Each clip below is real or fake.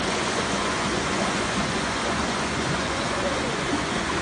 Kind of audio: fake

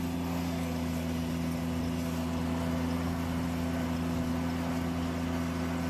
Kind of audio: real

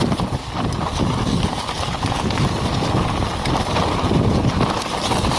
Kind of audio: real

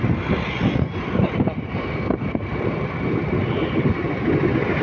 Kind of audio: real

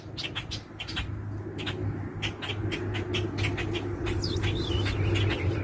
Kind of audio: real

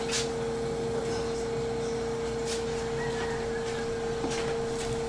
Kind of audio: real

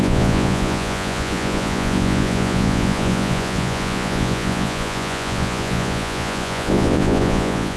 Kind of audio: fake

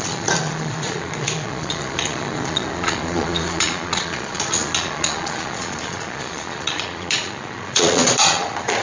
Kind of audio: fake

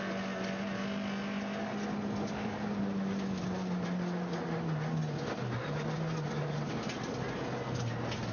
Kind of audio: real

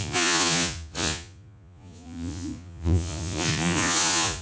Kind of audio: fake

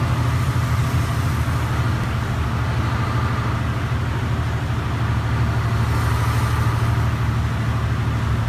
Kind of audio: real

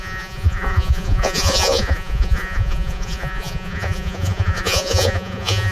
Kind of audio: fake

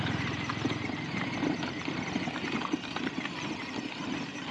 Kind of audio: real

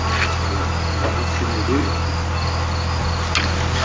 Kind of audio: real